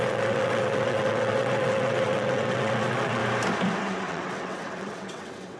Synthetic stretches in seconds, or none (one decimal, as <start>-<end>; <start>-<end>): 0.0-3.2; 3.8-5.6